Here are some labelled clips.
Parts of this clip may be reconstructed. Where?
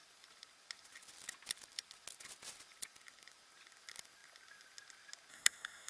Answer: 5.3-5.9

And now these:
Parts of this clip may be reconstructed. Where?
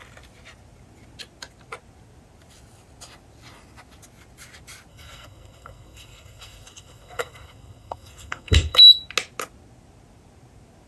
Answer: 4.9-8.8